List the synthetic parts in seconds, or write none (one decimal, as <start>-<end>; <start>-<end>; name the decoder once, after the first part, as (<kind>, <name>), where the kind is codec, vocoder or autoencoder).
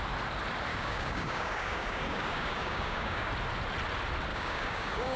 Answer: 0.7-3.3 (codec, DAC); 4.3-5.2